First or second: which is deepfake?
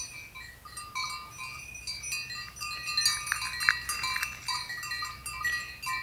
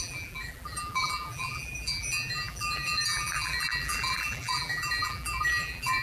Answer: second